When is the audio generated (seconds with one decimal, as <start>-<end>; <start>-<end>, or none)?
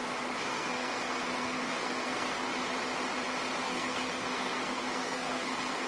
0.5-2.5; 3.6-5.9